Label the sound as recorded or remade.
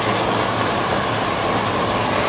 recorded